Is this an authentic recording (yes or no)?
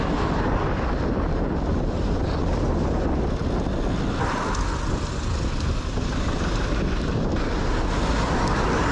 yes